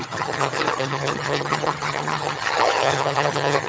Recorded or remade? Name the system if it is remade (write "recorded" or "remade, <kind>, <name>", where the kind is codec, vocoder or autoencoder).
remade, vocoder, HiFi-GAN